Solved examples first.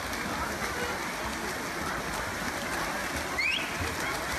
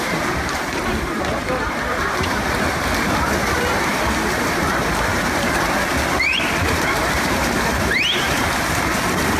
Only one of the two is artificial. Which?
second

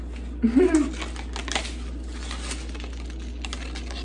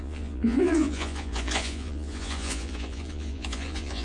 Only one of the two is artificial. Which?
second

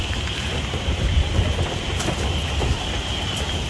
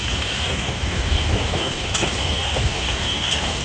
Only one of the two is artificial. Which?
second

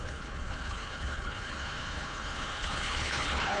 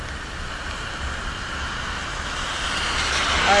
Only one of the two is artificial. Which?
first